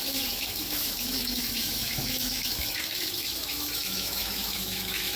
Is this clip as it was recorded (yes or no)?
no